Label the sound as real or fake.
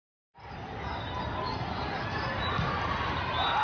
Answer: real